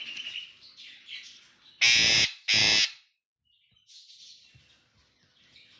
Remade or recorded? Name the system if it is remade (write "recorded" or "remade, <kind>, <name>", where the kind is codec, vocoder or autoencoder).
recorded